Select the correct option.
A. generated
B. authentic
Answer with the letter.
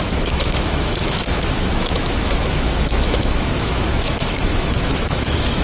A